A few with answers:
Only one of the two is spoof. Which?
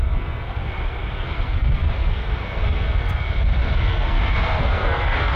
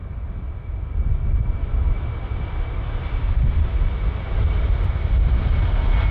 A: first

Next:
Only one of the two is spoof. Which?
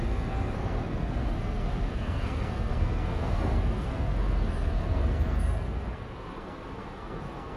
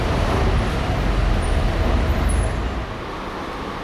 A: first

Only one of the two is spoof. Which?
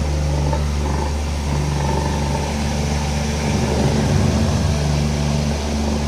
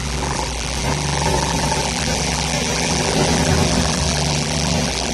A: second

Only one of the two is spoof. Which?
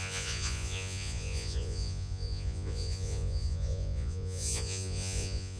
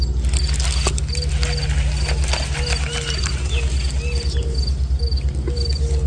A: first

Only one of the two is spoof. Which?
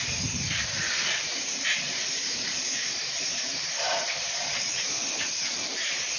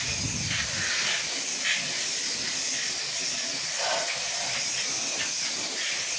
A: first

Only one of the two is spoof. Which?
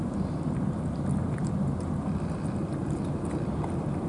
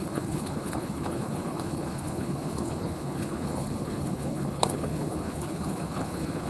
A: second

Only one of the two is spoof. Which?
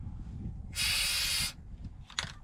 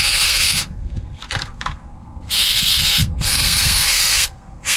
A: second